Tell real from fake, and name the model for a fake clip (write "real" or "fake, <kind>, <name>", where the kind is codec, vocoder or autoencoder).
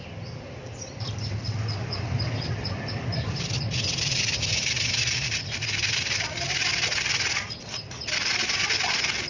real